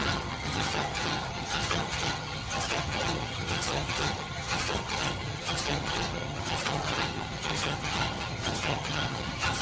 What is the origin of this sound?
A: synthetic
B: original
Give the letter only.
A